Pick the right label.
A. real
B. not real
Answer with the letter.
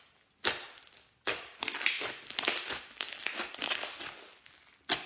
A